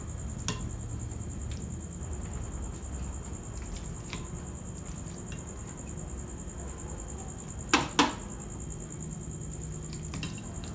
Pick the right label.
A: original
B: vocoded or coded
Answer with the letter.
A